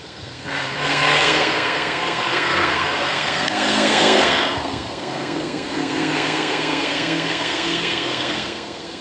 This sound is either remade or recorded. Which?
remade